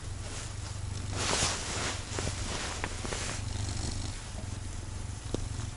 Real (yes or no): yes